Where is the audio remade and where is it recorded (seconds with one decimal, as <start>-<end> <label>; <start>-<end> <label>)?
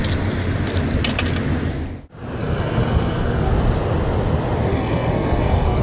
0.0-2.4 recorded; 2.4-3.5 remade; 3.5-4.7 recorded; 4.7-5.8 remade